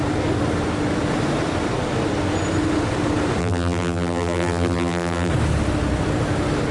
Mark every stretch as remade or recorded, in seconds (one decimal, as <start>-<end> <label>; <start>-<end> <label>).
0.0-3.4 recorded; 3.4-5.3 remade; 5.3-6.7 recorded